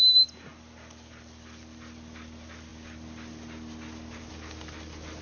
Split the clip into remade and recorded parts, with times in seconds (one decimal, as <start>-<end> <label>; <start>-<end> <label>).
0.0-5.2 recorded